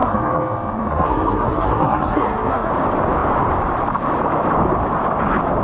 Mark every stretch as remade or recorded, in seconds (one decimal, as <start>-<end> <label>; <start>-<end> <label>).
0.0-2.7 remade; 2.7-5.6 recorded